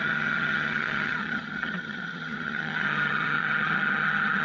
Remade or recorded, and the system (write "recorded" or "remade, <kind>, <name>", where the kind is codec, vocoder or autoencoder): remade, vocoder, HiFi-GAN